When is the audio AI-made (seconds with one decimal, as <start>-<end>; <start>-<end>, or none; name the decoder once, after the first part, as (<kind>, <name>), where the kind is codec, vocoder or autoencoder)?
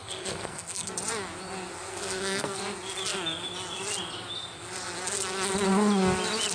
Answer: 0.0-0.9 (codec, SNAC); 1.9-2.6